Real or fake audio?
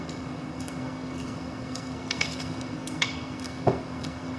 fake